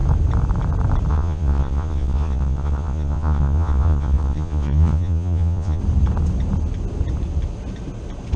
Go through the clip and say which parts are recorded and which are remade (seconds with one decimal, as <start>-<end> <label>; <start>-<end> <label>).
0.0-1.1 recorded; 1.1-5.8 remade; 5.8-8.4 recorded